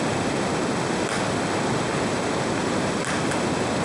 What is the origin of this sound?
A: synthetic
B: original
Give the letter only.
B